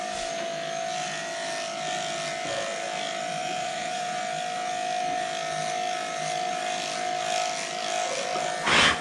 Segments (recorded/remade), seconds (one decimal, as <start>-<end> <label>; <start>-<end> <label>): 0.0-3.4 recorded; 3.4-4.2 remade; 4.2-9.0 recorded